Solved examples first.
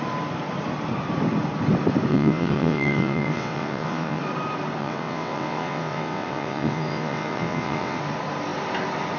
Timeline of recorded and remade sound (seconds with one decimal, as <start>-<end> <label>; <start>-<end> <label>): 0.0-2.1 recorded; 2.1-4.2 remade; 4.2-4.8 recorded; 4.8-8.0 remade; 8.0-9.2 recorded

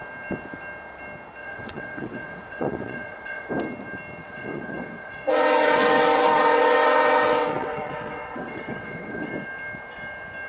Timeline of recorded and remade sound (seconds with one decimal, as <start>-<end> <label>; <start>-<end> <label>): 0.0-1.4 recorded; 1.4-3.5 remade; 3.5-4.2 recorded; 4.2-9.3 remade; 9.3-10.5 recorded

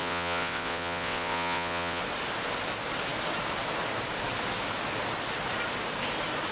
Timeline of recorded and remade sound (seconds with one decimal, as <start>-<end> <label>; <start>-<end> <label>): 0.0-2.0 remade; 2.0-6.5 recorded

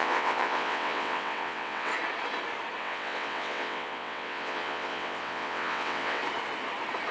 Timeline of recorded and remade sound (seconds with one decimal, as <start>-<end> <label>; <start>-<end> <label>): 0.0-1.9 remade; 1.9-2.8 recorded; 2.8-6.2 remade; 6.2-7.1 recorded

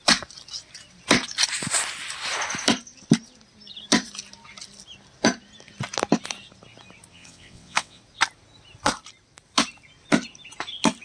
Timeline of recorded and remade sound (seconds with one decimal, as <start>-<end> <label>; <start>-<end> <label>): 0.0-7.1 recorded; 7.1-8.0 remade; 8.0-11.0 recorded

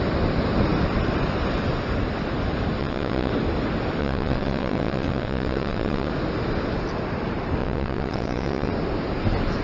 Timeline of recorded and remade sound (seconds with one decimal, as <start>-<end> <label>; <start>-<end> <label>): 0.0-2.8 recorded; 2.8-3.3 remade; 3.3-4.0 recorded; 4.0-6.1 remade; 6.1-7.6 recorded; 7.6-8.7 remade; 8.7-9.6 recorded